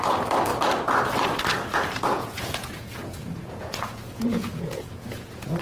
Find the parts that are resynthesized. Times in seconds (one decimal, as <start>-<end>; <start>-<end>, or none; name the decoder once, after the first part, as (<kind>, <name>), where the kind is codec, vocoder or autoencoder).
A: 2.1-5.6 (vocoder, Vocos)